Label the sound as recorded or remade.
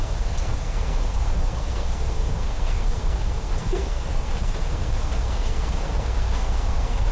remade